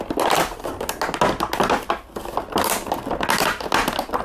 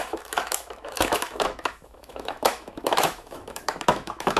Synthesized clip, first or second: second